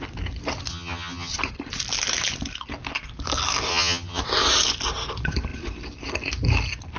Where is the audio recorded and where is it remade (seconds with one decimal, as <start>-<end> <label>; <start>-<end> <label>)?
0.0-0.7 recorded; 0.7-1.3 remade; 1.3-3.7 recorded; 3.7-4.2 remade; 4.2-7.0 recorded

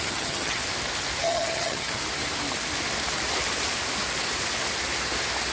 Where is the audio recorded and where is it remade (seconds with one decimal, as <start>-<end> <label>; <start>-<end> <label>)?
0.0-0.6 remade; 0.6-1.2 recorded; 1.2-2.0 remade; 2.0-5.5 recorded

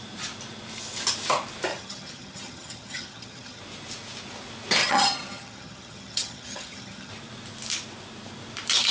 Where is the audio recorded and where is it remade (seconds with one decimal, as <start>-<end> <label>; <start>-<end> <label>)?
0.0-1.7 recorded; 1.7-3.6 remade; 3.6-4.8 recorded; 4.8-7.1 remade; 7.1-8.9 recorded

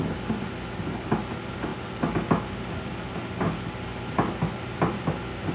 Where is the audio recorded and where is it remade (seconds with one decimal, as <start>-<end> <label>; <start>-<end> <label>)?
0.0-5.5 recorded

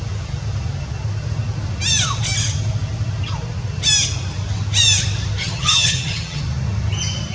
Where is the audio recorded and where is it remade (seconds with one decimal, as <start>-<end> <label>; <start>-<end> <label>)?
0.0-5.4 recorded; 5.4-6.4 remade; 6.4-7.3 recorded

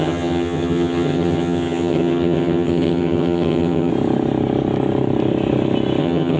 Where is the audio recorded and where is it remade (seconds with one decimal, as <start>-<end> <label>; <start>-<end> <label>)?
0.0-3.9 remade; 3.9-6.0 recorded; 6.0-6.4 remade

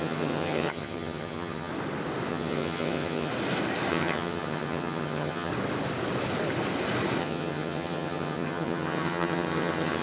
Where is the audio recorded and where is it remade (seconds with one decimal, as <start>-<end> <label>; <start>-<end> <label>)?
0.0-1.7 remade; 1.7-2.3 recorded; 2.3-3.3 remade; 3.3-3.9 recorded; 3.9-5.5 remade; 5.5-7.2 recorded; 7.2-10.0 remade